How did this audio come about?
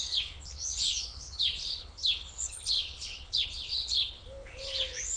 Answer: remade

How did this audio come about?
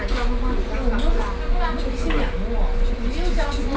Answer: recorded